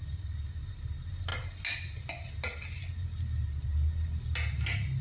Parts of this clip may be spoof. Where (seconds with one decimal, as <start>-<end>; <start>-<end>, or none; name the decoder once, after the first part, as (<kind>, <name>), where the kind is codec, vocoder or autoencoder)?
none